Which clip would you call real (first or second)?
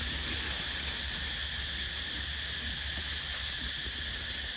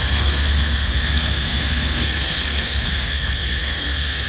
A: first